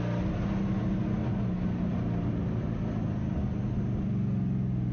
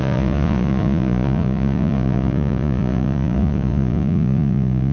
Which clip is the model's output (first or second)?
second